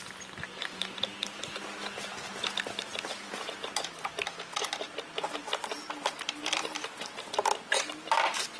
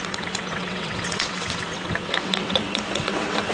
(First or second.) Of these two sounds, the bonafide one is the first